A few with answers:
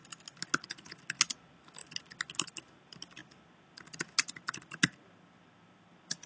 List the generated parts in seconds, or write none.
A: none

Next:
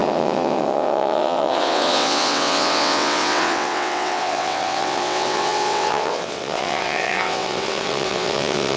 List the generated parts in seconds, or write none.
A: 0.0-8.8 (vocoder, WaveNeXt)